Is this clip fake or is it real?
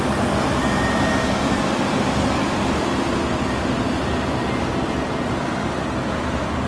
real